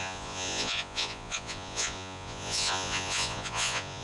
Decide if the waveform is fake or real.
fake